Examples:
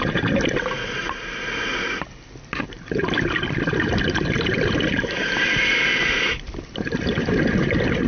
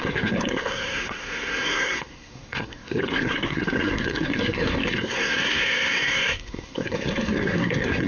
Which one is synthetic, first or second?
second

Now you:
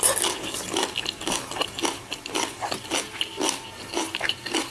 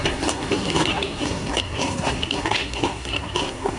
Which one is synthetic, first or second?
second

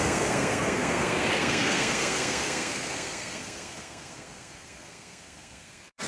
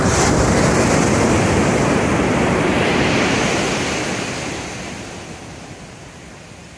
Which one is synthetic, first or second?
first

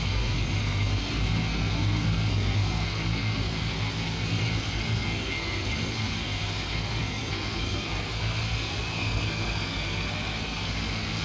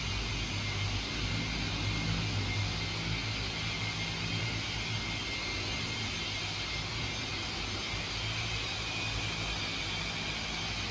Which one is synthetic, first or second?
first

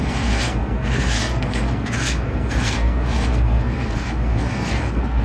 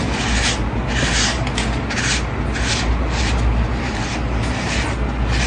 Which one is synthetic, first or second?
first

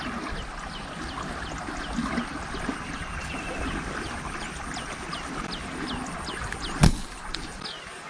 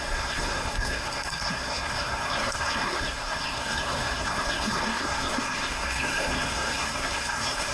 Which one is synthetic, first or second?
second